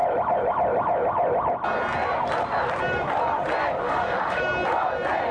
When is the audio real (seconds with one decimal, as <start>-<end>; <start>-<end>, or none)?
0.0-3.8; 4.4-5.3